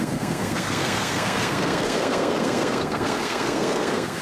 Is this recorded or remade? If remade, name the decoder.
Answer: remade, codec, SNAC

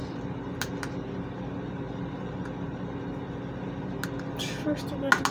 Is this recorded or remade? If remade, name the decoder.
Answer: recorded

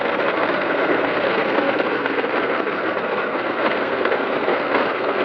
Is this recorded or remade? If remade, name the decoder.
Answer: remade, codec, SNAC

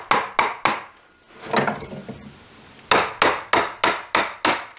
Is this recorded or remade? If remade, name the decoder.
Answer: recorded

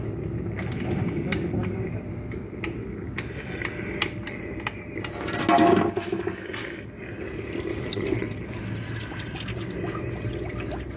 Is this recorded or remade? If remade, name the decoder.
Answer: recorded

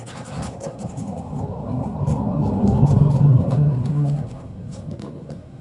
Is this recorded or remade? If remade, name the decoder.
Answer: remade, codec, SNAC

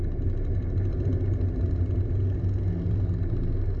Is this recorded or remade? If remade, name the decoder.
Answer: recorded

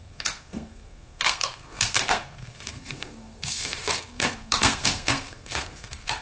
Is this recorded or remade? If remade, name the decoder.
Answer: remade, codec, SNAC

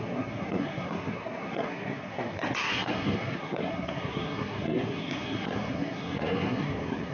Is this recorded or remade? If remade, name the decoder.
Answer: remade, codec, SNAC